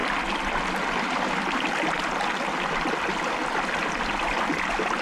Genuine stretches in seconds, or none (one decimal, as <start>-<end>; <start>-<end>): 0.0-5.0